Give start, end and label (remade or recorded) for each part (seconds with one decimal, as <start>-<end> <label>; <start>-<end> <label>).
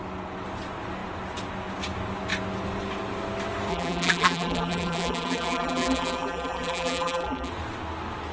0.0-3.7 recorded; 3.7-7.5 remade; 7.5-8.3 recorded